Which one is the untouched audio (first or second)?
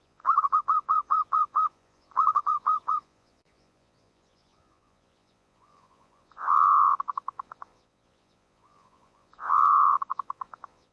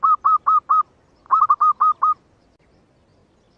second